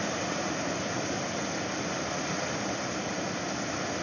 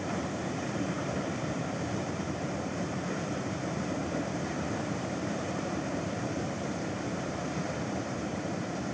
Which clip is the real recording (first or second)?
first